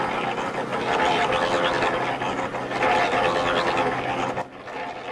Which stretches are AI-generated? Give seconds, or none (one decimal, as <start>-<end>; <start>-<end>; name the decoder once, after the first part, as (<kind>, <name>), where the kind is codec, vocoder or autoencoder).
none